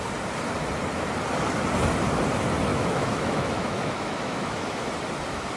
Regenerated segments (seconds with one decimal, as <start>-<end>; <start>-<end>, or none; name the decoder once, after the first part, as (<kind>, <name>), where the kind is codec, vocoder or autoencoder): 2.7-4.9 (autoencoder, DAC-VAE)